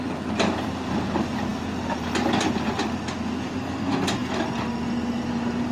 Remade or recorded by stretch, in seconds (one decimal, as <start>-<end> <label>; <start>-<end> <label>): 0.0-1.5 recorded; 1.5-2.1 remade; 2.1-5.7 recorded